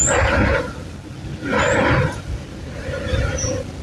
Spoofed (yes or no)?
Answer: no